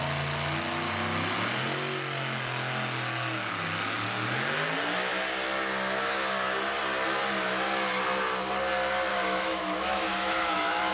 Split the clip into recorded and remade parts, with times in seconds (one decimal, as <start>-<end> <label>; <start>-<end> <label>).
0.0-9.1 recorded; 9.1-10.9 remade